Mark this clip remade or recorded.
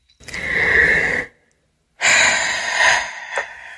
recorded